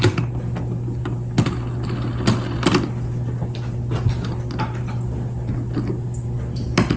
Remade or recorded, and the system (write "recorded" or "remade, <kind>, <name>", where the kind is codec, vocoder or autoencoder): recorded